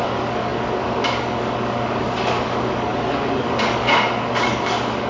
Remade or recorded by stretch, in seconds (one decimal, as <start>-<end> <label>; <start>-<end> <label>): 0.0-5.1 remade